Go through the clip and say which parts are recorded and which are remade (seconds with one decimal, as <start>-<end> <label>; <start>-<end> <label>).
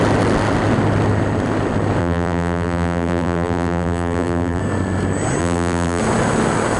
0.0-2.0 recorded; 2.0-4.6 remade; 4.6-5.4 recorded; 5.4-6.0 remade; 6.0-6.8 recorded